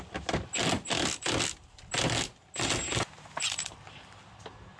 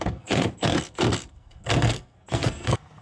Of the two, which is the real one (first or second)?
first